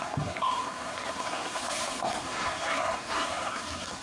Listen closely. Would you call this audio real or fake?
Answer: fake